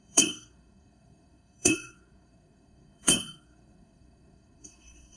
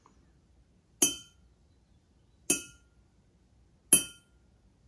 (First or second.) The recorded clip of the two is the second